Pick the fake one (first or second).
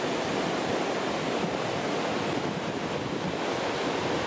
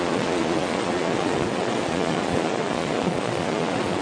second